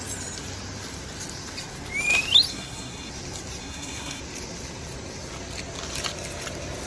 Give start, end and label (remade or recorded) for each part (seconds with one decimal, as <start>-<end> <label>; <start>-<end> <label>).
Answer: 0.0-2.5 recorded; 2.5-3.1 remade; 3.1-3.6 recorded; 3.6-4.2 remade; 4.2-6.9 recorded

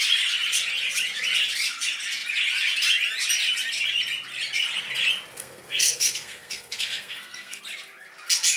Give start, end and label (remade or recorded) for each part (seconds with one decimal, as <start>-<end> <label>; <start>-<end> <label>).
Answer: 0.0-5.4 recorded; 5.4-7.6 remade; 7.6-8.6 recorded